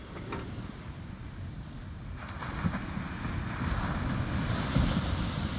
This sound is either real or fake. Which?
real